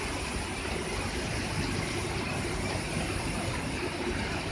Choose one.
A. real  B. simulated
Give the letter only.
A